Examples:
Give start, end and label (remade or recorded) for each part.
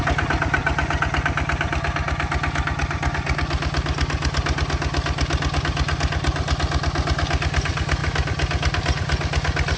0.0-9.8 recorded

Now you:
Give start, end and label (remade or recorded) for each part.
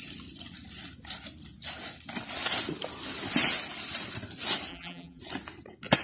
0.0-4.7 recorded; 4.7-5.2 remade; 5.2-6.0 recorded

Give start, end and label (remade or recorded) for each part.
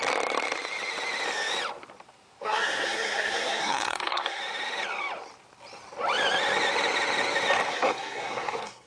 0.0-2.4 recorded; 2.4-4.4 remade; 4.4-7.7 recorded; 7.7-8.9 remade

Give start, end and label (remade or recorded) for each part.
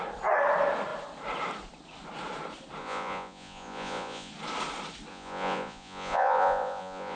0.0-2.8 recorded; 2.8-4.3 remade; 4.3-5.1 recorded; 5.1-7.2 remade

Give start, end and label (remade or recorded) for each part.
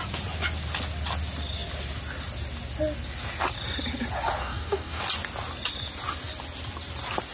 0.0-4.4 recorded; 4.4-5.0 remade; 5.0-7.3 recorded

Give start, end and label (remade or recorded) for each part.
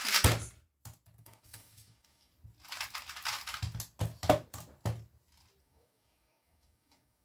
0.0-1.2 recorded; 1.2-2.3 remade; 2.3-5.6 recorded; 5.6-7.2 remade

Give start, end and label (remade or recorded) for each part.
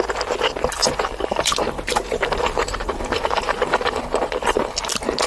0.0-0.8 recorded; 0.8-4.0 remade; 4.0-5.3 recorded